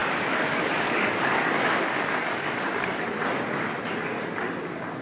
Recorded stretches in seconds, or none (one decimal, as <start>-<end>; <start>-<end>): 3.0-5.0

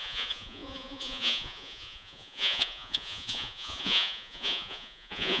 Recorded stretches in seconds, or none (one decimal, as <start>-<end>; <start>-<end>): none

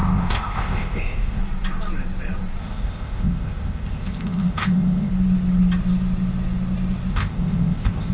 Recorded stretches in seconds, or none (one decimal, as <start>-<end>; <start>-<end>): 1.4-2.6; 5.1-7.1